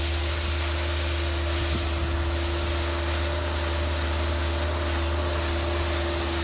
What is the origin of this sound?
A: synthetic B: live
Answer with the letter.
B